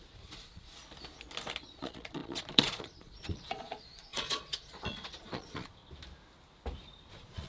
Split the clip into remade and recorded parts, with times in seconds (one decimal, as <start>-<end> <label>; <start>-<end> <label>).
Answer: 0.0-0.8 remade; 0.8-1.7 recorded; 1.7-5.8 remade; 5.8-7.1 recorded; 7.1-7.5 remade